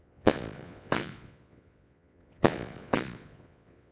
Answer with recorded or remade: remade